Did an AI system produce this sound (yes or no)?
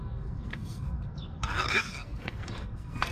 yes